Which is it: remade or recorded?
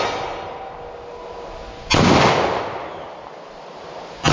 recorded